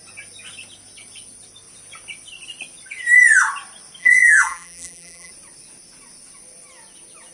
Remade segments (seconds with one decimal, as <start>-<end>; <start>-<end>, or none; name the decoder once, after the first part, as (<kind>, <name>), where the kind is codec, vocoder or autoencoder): 4.0-5.3 (vocoder, BigVGAN v2)